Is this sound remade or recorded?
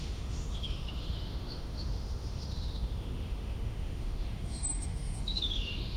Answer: remade